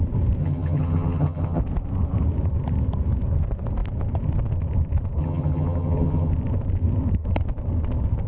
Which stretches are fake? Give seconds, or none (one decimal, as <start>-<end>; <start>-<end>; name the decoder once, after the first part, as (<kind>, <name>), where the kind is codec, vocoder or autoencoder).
0.4-1.6 (vocoder, HiFi-GAN); 5.2-6.3